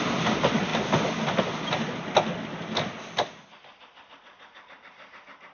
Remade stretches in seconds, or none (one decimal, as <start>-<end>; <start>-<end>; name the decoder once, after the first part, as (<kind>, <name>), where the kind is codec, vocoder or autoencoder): none